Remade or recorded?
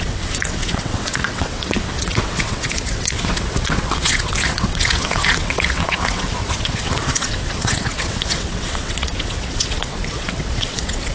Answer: remade